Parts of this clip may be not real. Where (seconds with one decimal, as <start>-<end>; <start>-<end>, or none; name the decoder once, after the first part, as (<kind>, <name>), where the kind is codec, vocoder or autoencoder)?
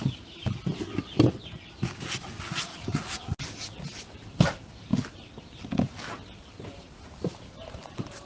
2.7-3.3 (vocoder, Vocos)